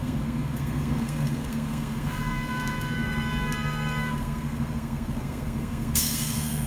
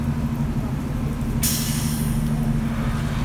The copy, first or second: first